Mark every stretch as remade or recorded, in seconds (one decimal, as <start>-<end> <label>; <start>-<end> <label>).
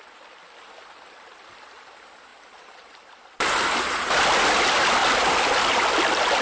0.0-6.4 recorded